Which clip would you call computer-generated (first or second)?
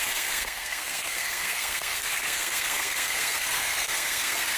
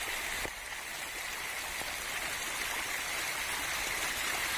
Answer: first